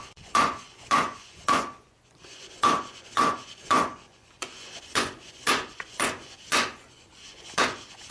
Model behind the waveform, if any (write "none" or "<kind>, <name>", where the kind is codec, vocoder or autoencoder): vocoder, Vocos